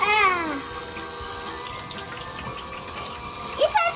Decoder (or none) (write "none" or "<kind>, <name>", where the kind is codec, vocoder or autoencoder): none